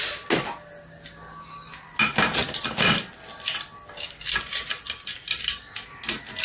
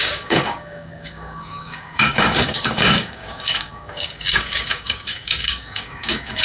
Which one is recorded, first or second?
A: first